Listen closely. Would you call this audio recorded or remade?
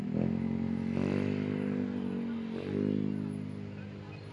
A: recorded